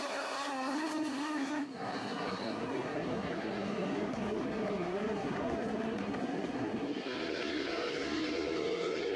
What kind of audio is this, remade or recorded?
remade